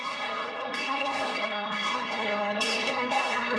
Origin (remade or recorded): remade